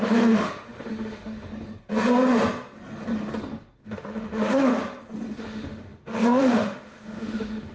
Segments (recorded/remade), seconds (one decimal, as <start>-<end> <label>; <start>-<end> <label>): 0.0-1.5 remade; 1.5-3.8 recorded; 3.8-4.7 remade; 4.7-5.4 recorded; 5.4-7.7 remade